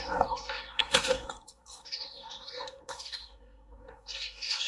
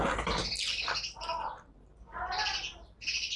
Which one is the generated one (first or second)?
first